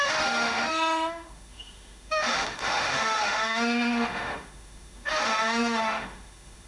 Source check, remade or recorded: remade